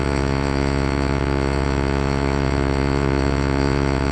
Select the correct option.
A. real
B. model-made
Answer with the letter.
B